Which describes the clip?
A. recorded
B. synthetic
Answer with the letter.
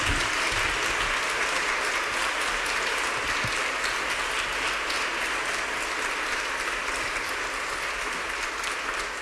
A